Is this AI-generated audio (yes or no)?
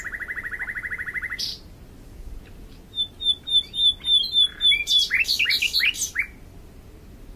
no